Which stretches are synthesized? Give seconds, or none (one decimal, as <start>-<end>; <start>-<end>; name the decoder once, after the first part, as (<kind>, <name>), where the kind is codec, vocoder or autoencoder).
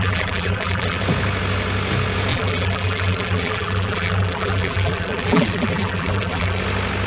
0.0-1.0 (vocoder, BigVGAN v2); 2.3-6.6